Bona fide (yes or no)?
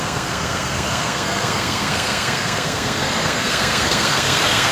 no